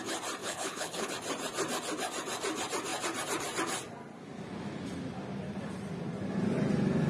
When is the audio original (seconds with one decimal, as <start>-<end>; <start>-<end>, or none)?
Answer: 0.0-0.4; 1.1-7.1